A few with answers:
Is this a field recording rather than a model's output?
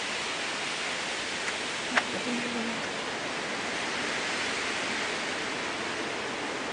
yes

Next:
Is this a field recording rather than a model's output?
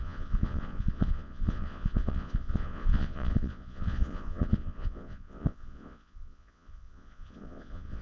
no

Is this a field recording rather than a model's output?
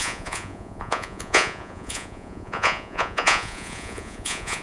no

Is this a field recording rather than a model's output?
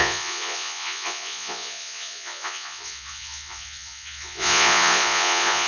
no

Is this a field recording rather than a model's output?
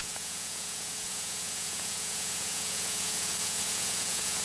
no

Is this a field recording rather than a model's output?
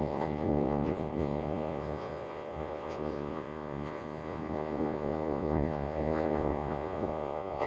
no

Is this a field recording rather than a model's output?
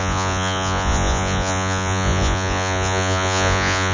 no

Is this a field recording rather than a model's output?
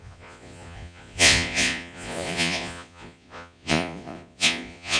no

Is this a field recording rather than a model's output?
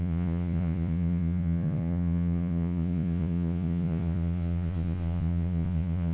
no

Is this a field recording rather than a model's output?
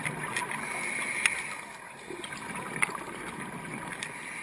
yes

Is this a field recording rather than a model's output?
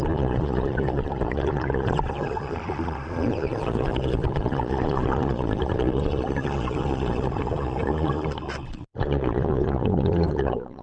no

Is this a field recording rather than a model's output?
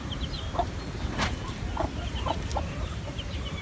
yes